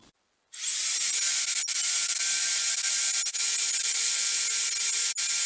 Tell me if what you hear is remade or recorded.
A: recorded